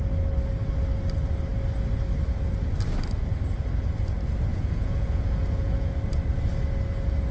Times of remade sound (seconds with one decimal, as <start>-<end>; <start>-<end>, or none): 4.5-5.9